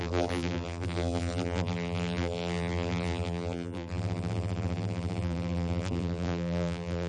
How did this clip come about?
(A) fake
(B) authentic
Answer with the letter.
A